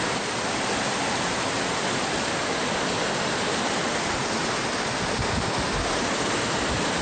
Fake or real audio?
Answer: real